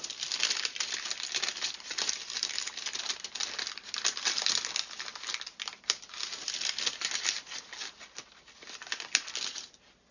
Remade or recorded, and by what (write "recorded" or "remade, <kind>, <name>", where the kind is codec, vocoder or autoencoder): recorded